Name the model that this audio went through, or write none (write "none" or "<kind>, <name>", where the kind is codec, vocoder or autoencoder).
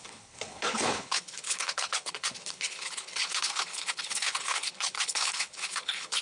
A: codec, HILCodec